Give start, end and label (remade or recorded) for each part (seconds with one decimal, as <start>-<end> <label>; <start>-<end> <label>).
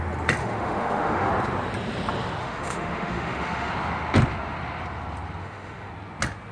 0.0-0.4 recorded; 0.4-1.3 remade; 1.3-2.4 recorded; 2.4-3.7 remade; 3.7-5.4 recorded; 5.4-5.9 remade; 5.9-6.5 recorded